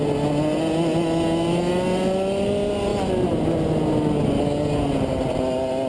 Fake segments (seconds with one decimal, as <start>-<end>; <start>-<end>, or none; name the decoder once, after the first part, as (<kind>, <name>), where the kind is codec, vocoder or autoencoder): none

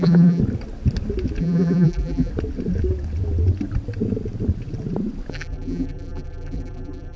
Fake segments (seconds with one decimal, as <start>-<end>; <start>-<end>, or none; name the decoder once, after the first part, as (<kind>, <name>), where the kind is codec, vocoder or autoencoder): 0.0-0.4 (vocoder, BigVGAN v2); 1.4-2.3; 5.3-7.2

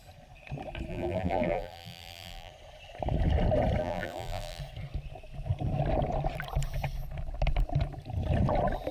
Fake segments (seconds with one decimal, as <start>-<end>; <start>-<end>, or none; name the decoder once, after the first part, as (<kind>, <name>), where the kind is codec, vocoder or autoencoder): 0.9-2.5 (vocoder, BigVGAN v2); 3.8-4.6

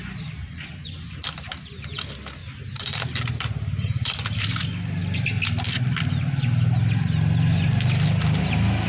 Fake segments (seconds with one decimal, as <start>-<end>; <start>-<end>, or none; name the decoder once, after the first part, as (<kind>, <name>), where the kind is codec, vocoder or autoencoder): 2.4-4.4 (vocoder, BigVGAN v2)

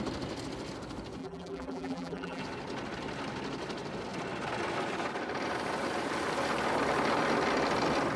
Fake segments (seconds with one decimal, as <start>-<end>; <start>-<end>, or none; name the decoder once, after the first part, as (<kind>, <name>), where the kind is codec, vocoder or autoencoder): 1.2-2.4 (vocoder, BigVGAN v2)

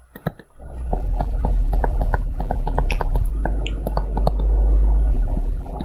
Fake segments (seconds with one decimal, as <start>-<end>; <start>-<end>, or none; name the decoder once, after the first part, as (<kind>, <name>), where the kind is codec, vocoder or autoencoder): 0.9-3.3 (vocoder, BigVGAN v2); 5.1-5.8

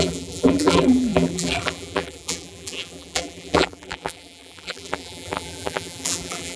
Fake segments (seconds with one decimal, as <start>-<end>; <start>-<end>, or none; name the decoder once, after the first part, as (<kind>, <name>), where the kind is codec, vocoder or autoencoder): 0.0-6.6 (vocoder, BigVGAN v2)

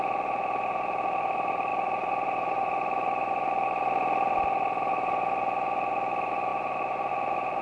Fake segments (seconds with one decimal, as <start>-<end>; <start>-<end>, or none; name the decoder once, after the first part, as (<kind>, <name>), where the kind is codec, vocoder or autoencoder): 1.7-4.9 (vocoder, BigVGAN v2)